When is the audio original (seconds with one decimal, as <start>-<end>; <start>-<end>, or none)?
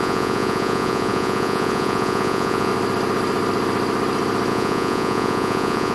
2.7-4.5